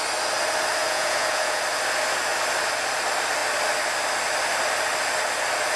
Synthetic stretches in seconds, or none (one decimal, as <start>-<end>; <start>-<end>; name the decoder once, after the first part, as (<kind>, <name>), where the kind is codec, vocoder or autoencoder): 0.8-1.6 (vocoder, Vocos)